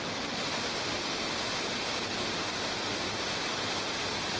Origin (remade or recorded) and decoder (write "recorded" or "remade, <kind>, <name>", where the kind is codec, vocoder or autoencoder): recorded